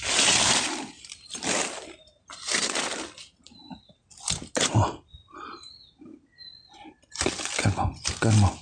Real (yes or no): yes